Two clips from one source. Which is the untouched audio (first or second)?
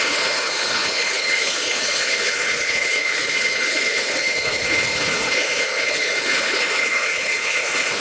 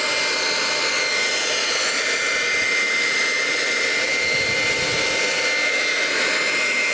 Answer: second